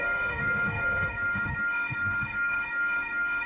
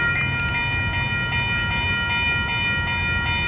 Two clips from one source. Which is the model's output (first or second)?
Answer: first